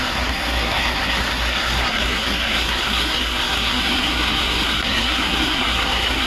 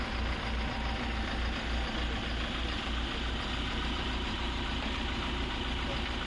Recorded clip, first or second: second